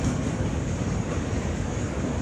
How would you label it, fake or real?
fake